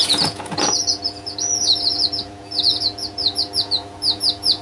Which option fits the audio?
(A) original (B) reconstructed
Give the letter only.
B